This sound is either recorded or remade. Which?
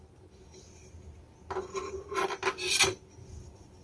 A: recorded